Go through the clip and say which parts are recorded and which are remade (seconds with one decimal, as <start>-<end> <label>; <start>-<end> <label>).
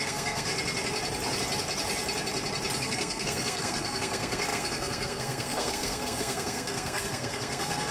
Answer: 0.0-0.5 remade; 0.5-2.8 recorded; 2.8-7.9 remade